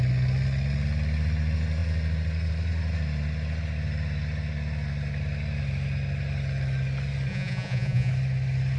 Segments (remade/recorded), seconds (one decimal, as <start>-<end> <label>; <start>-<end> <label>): 0.0-7.3 recorded; 7.3-8.1 remade; 8.1-8.8 recorded